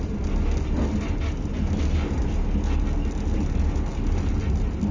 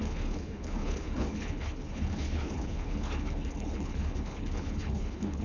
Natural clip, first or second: first